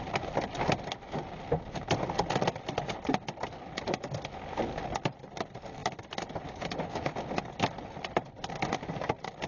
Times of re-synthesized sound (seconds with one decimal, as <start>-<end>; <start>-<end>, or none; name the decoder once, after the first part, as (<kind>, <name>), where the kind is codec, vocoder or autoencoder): none